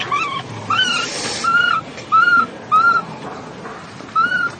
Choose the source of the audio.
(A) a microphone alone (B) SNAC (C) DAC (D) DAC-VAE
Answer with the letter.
A